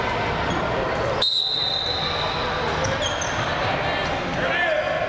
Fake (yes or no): no